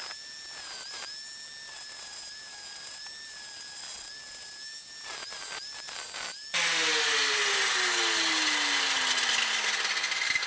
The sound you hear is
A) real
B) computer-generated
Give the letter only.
A